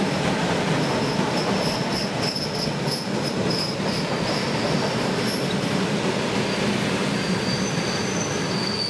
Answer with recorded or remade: recorded